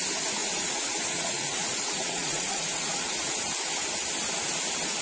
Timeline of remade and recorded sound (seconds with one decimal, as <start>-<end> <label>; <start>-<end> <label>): 0.0-0.4 recorded; 0.4-3.4 remade; 3.4-5.0 recorded